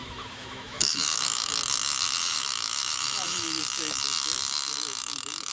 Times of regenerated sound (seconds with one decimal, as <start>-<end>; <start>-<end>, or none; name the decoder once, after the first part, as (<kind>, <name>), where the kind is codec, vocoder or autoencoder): 0.0-1.5 (autoencoder, DAC-VAE); 2.2-3.6; 4.7-5.5

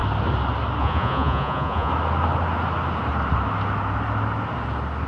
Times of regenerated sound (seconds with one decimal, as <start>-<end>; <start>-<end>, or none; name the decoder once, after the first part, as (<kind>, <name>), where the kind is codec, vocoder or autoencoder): 0.8-1.9 (vocoder, Vocos)

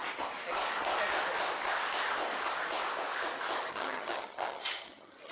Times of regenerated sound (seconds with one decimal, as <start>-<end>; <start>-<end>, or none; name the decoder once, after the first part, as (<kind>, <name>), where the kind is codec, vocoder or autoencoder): 3.7-5.3 (vocoder, HiFi-GAN)

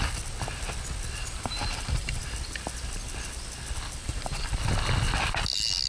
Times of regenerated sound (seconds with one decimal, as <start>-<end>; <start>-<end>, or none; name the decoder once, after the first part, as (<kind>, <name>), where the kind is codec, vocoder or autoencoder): 1.2-2.2 (vocoder, BigVGAN v2); 4.0-4.6